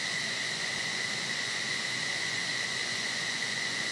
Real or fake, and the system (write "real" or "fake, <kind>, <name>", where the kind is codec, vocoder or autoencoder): fake, vocoder, Vocos